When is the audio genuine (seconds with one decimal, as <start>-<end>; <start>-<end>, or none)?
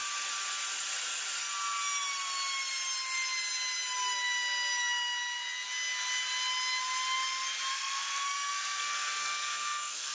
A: 0.0-7.7